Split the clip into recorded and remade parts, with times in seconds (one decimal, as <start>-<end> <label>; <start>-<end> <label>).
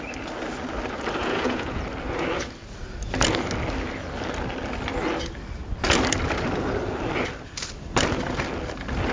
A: 0.0-1.2 recorded; 1.2-1.8 remade; 1.8-9.1 recorded